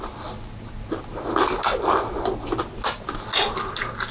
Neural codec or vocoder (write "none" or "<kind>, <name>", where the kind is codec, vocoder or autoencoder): none